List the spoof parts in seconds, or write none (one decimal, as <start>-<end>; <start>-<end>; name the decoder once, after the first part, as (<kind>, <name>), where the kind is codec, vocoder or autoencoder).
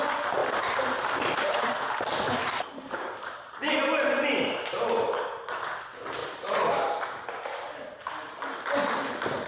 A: 0.4-1.9 (vocoder, BigVGAN v2); 2.4-3.7; 6.2-7.0